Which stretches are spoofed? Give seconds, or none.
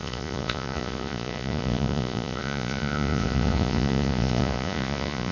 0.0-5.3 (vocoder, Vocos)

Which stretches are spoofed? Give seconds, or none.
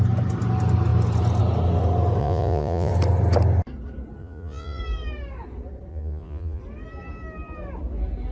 2.2-2.9 (vocoder, Vocos); 4.2-4.8; 5.9-6.6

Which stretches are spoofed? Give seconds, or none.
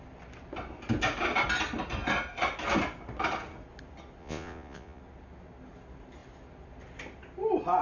4.2-5.0 (vocoder, Vocos)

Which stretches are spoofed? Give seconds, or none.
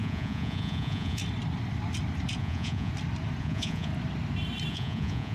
0.0-1.2 (vocoder, Vocos); 2.4-2.9; 3.4-3.9; 4.7-5.3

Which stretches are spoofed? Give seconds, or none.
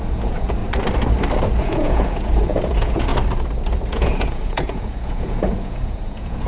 0.0-0.6 (vocoder, Vocos); 1.6-3.1; 3.9-6.5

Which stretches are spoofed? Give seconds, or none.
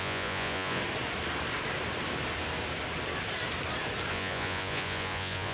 0.0-0.8 (vocoder, Vocos); 4.1-5.5